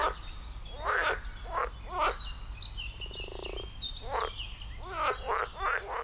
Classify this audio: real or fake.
real